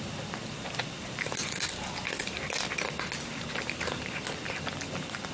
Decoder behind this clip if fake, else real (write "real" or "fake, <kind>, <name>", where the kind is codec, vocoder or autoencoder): real